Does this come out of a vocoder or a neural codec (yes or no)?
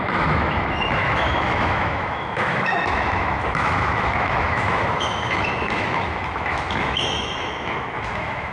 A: yes